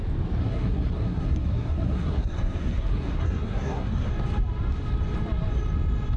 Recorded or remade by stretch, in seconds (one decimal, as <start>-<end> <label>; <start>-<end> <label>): 0.0-0.4 recorded; 0.4-4.1 remade; 4.1-6.2 recorded